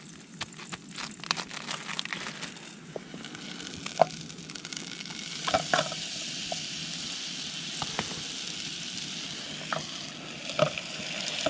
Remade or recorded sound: recorded